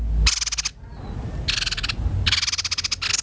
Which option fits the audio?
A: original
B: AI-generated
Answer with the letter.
A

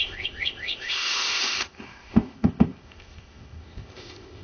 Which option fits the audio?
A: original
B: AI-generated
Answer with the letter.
B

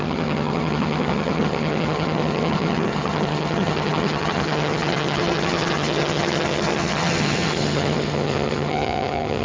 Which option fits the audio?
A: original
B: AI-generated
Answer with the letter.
B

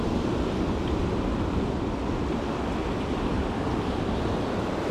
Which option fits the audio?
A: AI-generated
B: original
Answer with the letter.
B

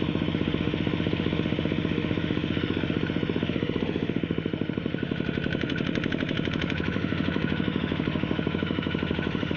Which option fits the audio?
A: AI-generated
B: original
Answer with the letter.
A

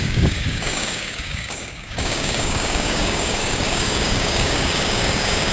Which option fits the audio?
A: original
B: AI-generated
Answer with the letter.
B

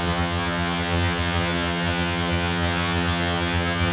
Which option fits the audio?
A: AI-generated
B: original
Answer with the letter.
A